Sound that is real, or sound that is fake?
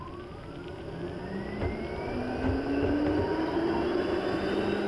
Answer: real